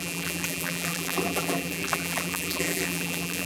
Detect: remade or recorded remade